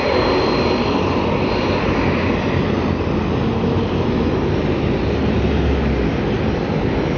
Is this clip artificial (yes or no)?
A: no